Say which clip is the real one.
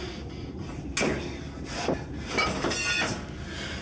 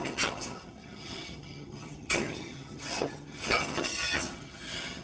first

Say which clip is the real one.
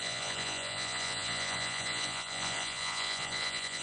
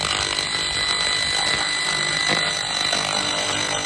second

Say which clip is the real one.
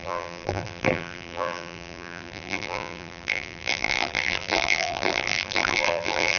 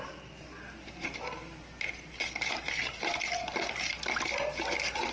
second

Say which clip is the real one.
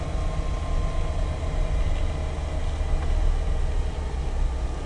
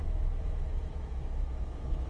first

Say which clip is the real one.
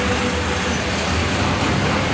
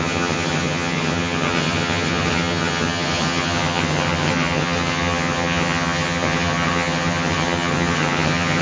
first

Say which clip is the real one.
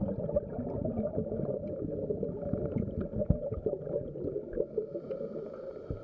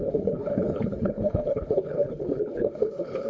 first